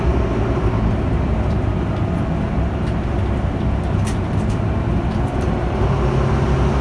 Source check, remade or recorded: recorded